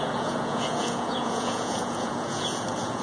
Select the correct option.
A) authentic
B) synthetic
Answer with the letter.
B